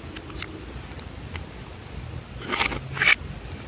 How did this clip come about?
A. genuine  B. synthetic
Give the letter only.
A